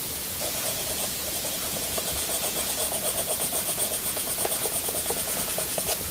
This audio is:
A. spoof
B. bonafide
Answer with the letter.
A